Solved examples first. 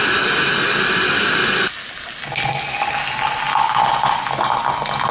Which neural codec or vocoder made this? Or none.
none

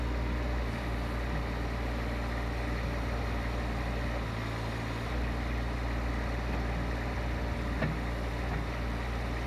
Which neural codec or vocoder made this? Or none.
none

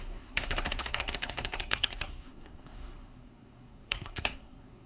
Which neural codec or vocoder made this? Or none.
codec, SNAC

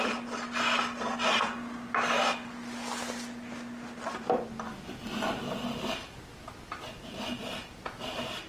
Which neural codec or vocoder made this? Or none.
none